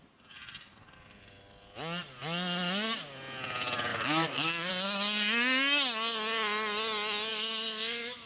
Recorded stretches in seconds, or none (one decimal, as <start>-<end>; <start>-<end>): 0.0-3.9; 4.7-7.3